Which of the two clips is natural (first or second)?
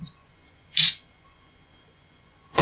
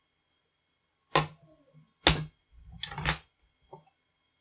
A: second